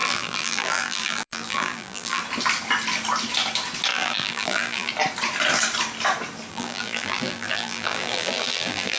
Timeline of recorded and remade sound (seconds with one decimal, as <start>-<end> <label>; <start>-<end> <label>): 0.0-2.2 remade; 2.2-3.9 recorded; 3.9-4.9 remade; 4.9-6.5 recorded; 6.5-9.0 remade